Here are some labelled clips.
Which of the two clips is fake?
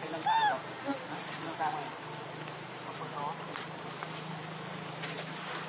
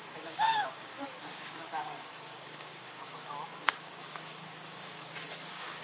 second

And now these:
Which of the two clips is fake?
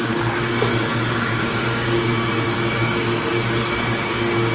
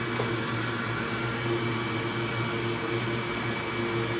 first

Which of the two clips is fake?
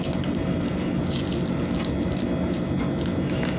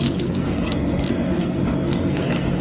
second